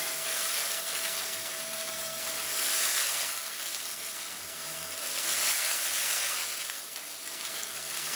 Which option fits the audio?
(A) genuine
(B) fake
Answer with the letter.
B